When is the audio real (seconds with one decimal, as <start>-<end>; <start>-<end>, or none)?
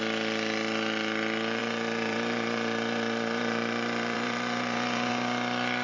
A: 0.0-1.6; 5.1-5.8